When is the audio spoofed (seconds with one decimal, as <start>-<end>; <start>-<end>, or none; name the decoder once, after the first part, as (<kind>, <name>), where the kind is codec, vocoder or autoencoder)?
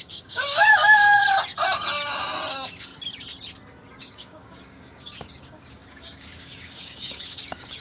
0.0-1.2 (codec, DAC); 2.5-2.9; 4.0-7.8